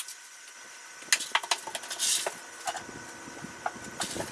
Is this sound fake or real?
real